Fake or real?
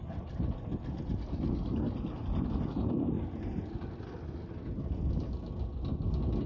real